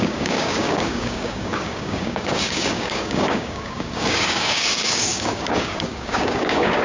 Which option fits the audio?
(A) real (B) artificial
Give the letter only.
B